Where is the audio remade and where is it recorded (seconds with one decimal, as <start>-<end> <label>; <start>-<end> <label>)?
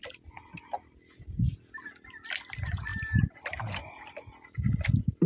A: 0.0-5.3 recorded